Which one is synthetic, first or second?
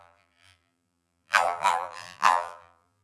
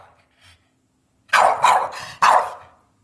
first